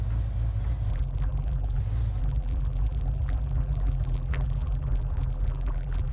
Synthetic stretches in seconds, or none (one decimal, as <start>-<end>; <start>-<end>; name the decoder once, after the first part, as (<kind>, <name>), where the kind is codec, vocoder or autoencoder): 0.9-1.8 (vocoder, BigVGAN v2); 2.2-6.1